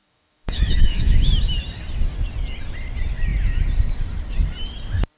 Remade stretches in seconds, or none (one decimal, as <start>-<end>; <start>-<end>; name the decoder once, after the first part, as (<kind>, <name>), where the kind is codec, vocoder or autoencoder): 0.0-1.3 (autoencoder, DAC-VAE)